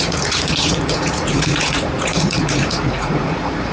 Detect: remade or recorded remade